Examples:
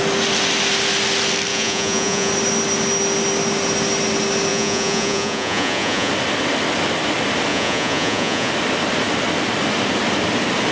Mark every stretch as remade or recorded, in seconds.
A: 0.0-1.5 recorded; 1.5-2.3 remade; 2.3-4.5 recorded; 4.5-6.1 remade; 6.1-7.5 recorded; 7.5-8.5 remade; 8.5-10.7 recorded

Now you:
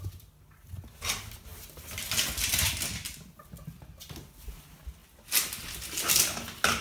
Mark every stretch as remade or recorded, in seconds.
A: 0.0-6.8 recorded

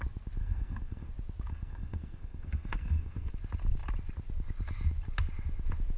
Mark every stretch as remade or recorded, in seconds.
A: 0.0-0.4 recorded; 0.4-1.1 remade; 1.1-1.5 recorded; 1.5-3.3 remade; 3.3-6.0 recorded

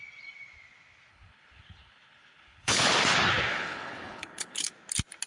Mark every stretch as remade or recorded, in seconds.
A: 0.0-1.1 recorded; 1.1-2.9 remade; 2.9-3.5 recorded; 3.5-4.7 remade; 4.7-5.3 recorded